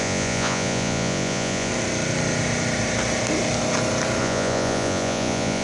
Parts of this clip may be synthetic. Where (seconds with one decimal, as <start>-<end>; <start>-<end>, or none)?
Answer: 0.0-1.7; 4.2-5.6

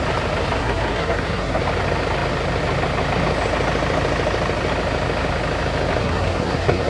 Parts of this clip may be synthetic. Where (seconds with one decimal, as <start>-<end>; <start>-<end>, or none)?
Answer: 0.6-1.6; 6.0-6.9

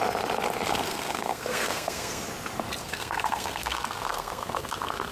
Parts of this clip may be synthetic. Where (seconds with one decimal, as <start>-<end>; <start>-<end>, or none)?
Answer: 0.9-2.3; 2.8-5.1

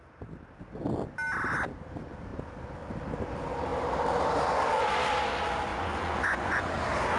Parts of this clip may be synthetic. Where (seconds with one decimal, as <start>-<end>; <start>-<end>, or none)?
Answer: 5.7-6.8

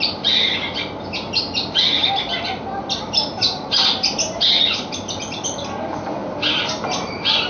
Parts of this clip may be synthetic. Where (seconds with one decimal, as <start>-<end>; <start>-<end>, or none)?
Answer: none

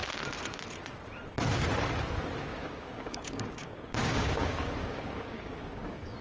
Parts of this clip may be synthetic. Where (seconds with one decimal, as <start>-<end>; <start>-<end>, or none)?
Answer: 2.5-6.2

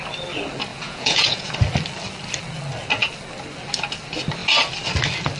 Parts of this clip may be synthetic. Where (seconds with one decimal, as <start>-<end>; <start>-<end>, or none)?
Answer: 0.7-1.5

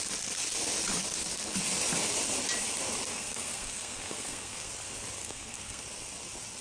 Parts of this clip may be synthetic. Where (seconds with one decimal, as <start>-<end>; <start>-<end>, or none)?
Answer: 3.1-4.7; 5.2-5.8